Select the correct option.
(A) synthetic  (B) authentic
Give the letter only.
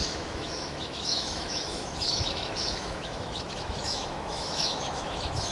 A